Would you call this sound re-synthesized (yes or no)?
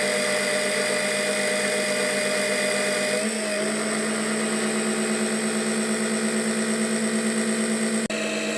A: no